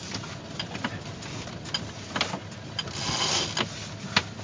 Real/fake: real